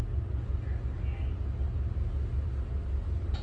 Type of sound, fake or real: real